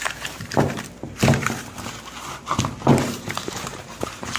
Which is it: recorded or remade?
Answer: remade